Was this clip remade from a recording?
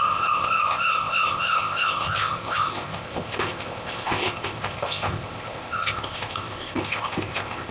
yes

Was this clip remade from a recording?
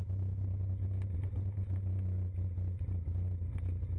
no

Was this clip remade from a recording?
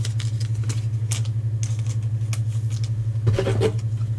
no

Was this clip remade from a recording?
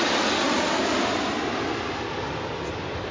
no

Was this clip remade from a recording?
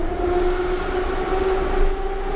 no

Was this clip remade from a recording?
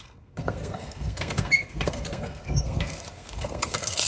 yes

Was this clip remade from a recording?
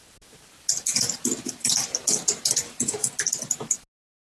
no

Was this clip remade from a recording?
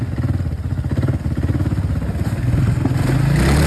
no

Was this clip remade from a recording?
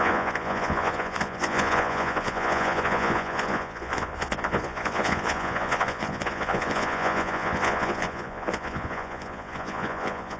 yes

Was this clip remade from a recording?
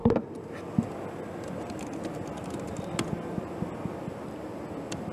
no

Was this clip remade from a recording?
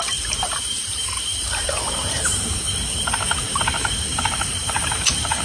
yes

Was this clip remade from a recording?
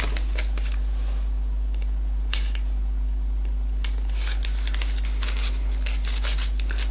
no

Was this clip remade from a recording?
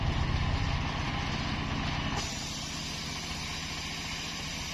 no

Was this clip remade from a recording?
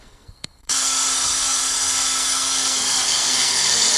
yes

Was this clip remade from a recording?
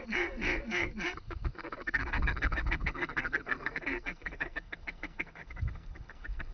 yes